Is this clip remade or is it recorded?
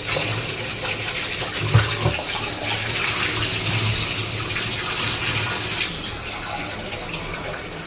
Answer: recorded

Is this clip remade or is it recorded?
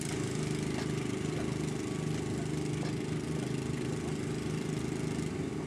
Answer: recorded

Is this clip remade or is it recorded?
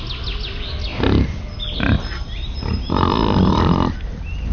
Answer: recorded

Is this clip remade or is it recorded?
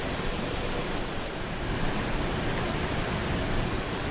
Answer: remade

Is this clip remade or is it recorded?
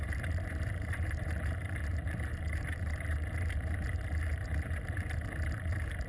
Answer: remade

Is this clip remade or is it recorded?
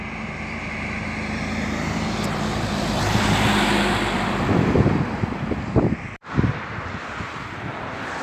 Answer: remade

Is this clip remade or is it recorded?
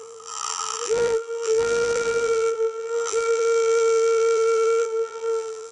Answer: remade